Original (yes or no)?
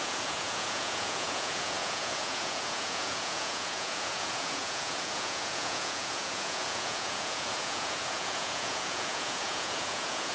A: no